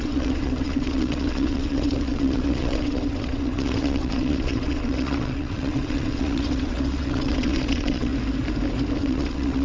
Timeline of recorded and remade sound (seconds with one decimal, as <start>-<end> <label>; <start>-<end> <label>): 0.0-8.1 remade; 8.1-9.0 recorded; 9.0-9.6 remade